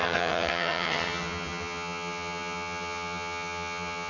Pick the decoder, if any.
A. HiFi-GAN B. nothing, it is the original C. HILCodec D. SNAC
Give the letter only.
A